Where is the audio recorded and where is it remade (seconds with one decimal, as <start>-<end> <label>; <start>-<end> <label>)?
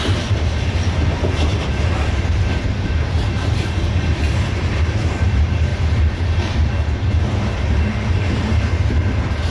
0.0-9.5 remade